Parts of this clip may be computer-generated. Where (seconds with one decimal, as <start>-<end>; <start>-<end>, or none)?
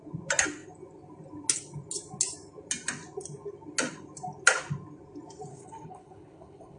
5.5-6.8